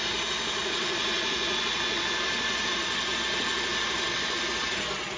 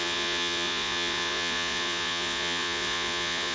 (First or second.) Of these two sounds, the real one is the first